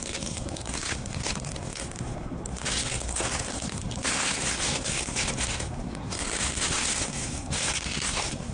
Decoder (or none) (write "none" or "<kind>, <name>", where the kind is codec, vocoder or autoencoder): codec, SNAC